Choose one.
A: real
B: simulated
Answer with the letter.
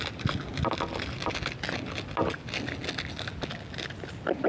A